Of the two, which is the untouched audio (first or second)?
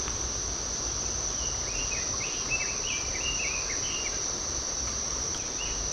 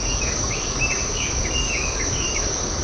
first